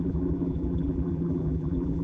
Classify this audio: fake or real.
fake